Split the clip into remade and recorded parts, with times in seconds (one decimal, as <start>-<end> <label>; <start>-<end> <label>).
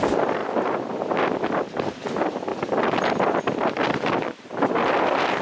0.0-5.4 recorded